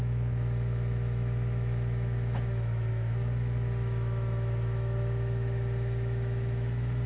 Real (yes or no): no